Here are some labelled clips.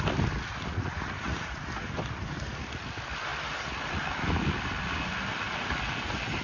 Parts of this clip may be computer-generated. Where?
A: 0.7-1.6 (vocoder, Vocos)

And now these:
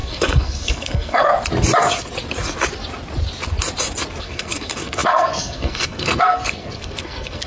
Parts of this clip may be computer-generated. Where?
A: 0.0-1.3 (codec, SNAC); 4.2-7.5

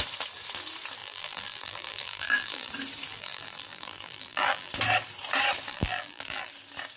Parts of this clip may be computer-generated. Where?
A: 1.0-2.7 (vocoder, BigVGAN v2); 3.1-4.7; 5.7-6.5

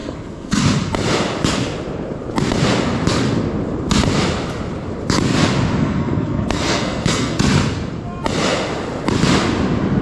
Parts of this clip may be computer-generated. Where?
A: 0.0-0.6 (codec, SNAC); 5.8-7.4

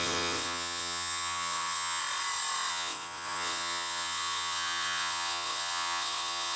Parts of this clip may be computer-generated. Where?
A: 0.0-2.0 (vocoder, WaveNeXt); 2.7-6.6